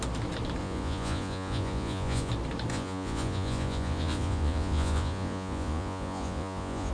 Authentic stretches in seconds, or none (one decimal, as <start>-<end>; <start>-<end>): 0.0-0.6; 2.3-2.7